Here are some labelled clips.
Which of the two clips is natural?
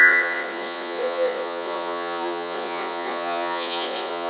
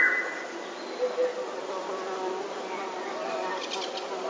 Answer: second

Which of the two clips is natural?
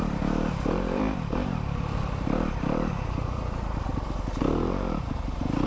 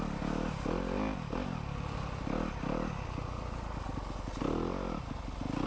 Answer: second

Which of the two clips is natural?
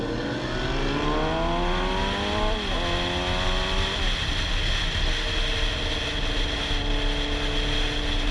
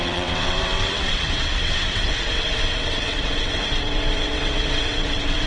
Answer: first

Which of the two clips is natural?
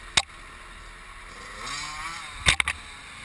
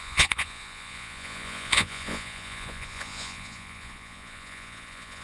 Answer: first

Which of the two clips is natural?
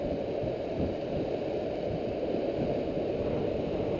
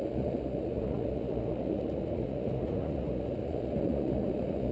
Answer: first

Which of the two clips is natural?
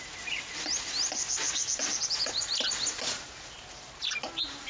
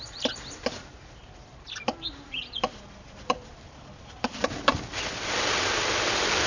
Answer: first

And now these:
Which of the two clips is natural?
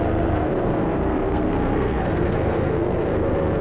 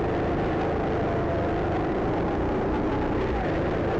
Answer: second